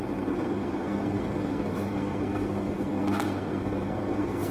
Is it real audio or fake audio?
fake